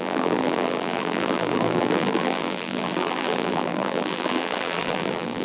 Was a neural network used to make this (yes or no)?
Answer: yes